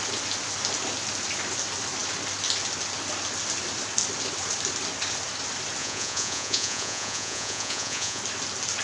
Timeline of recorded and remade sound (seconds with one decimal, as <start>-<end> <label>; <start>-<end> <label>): 0.0-5.8 recorded; 5.8-8.2 remade; 8.2-8.8 recorded